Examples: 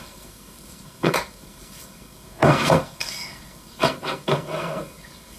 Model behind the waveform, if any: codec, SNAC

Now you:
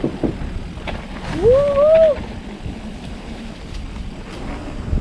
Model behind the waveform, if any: none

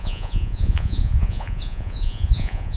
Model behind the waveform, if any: vocoder, Vocos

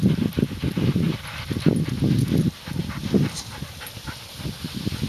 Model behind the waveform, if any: none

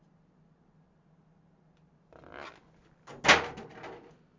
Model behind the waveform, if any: none